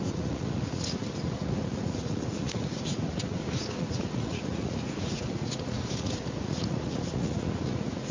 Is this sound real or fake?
fake